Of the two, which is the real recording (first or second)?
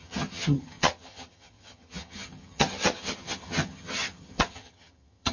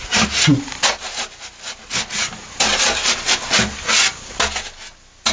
second